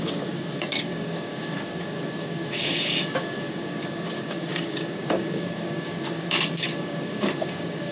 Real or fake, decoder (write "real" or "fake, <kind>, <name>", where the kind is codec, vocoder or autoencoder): fake, codec, DAC